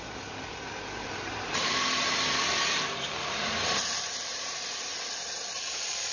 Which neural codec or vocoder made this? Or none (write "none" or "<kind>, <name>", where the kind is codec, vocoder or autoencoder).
vocoder, BigVGAN v2